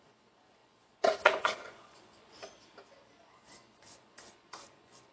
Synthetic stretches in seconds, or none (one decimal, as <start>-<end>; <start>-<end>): 0.0-2.4; 3.2-5.1